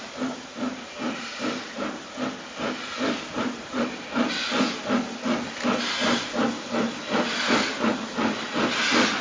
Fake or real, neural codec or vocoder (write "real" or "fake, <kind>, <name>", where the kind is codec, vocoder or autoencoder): real